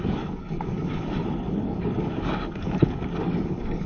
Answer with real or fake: fake